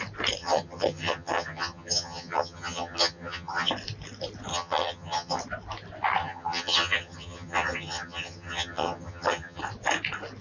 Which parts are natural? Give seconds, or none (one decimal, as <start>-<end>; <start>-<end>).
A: 0.0-0.4; 3.7-4.5; 5.4-6.2; 9.6-10.4

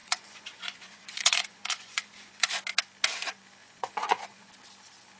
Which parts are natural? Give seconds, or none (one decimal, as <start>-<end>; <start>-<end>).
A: 2.5-3.6; 4.5-5.2